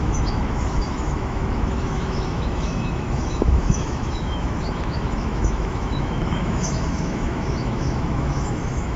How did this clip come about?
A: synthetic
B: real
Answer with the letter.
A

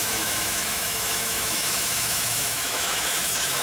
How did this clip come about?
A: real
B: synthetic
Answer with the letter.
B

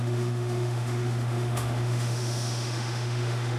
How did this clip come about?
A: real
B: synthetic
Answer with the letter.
B